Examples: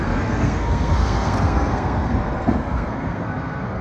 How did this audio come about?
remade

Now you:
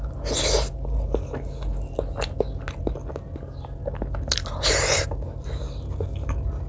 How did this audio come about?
recorded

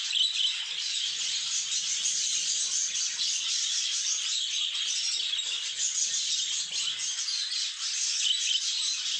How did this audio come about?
recorded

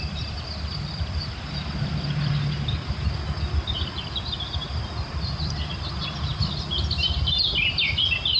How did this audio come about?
recorded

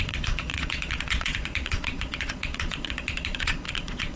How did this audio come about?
remade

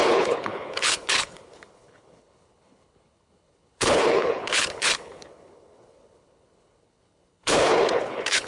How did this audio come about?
remade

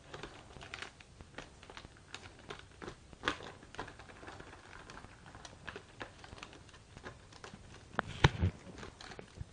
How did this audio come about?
recorded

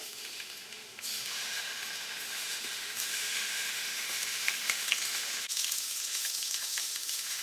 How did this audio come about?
remade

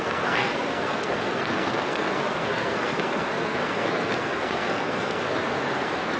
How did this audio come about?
remade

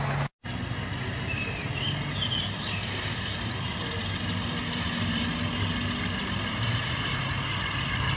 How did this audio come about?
recorded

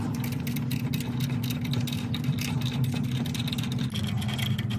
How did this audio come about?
recorded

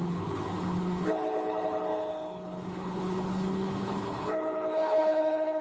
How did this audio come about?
remade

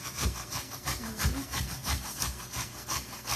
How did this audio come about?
remade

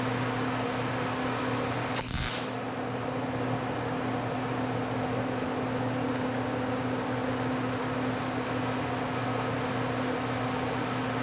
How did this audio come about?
recorded